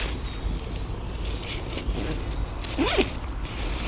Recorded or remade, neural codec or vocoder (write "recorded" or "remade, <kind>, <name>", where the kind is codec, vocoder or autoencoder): recorded